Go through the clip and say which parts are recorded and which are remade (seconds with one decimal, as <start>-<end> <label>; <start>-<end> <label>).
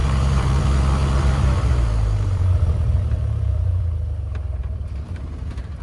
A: 0.0-0.6 remade; 0.6-1.0 recorded; 1.0-3.8 remade; 3.8-4.6 recorded; 4.6-5.8 remade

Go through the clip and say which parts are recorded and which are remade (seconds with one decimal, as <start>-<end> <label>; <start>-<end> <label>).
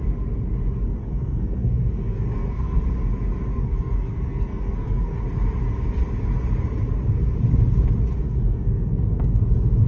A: 0.0-1.0 recorded; 1.0-2.8 remade; 2.8-3.5 recorded; 3.5-5.2 remade; 5.2-8.2 recorded; 8.2-9.4 remade; 9.4-9.9 recorded